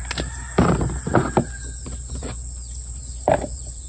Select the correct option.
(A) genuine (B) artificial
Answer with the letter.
B